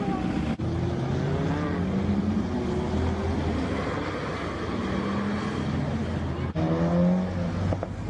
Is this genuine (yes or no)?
yes